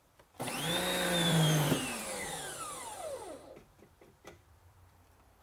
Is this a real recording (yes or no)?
no